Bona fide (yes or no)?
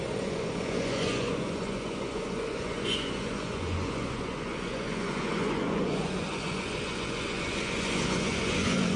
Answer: no